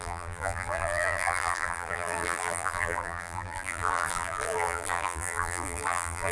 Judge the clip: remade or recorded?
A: remade